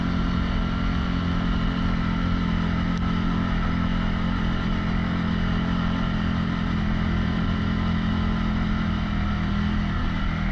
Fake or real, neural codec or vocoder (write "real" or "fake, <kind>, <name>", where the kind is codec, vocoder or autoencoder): real